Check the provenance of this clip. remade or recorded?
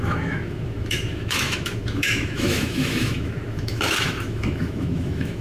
remade